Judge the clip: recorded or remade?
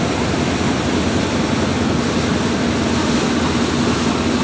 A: recorded